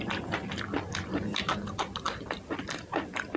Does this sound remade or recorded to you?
recorded